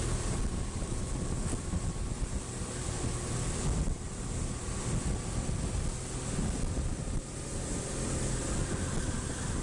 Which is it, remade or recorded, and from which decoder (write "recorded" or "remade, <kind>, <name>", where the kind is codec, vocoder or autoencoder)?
recorded